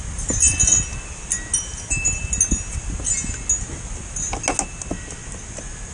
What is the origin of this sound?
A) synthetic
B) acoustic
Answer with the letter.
B